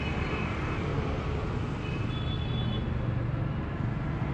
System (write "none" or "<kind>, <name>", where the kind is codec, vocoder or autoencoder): none